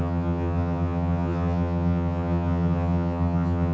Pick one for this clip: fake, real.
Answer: fake